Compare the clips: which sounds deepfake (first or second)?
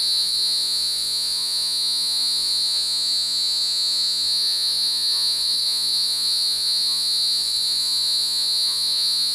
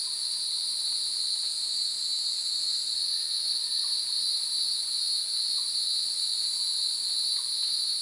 first